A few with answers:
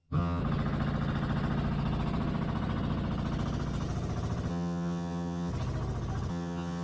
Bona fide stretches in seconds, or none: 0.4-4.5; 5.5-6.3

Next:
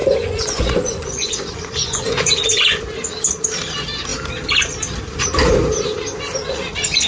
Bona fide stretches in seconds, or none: 2.8-7.1

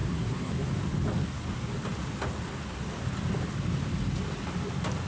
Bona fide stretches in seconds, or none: 0.5-5.1